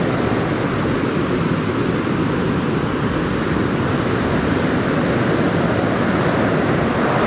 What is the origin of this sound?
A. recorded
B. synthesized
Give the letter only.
A